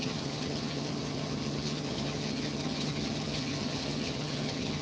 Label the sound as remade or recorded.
remade